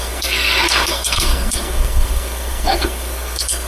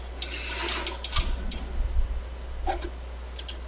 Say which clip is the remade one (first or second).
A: first